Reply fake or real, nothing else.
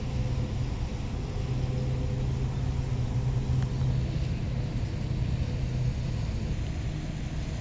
real